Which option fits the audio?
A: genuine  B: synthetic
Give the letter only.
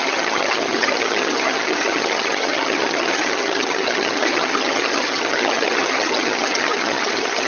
B